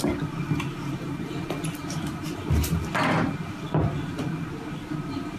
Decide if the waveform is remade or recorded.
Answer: recorded